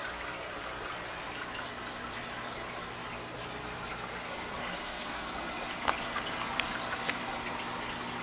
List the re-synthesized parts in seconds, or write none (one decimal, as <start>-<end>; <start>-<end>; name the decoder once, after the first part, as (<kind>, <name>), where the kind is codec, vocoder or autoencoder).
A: 4.6-5.2 (codec, SNAC)